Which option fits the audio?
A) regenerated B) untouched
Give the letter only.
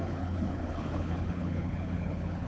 A